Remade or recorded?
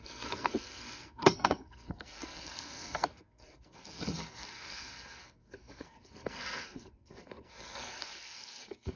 remade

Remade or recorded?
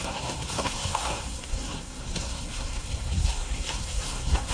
remade